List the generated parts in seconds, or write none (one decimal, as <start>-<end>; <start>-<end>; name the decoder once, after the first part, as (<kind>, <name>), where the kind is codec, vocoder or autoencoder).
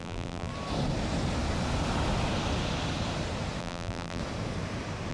0.0-0.5 (vocoder, BigVGAN v2); 3.6-4.2